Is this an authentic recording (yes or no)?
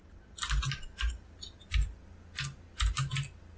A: yes